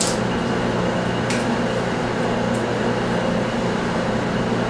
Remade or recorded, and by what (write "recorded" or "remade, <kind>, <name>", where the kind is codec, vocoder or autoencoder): recorded